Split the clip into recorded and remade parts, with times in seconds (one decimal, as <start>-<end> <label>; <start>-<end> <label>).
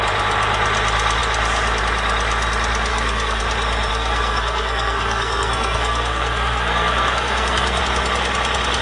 0.0-2.9 recorded; 2.9-3.4 remade; 3.4-3.9 recorded; 3.9-7.8 remade; 7.8-8.8 recorded